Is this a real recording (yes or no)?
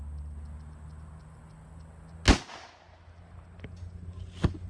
yes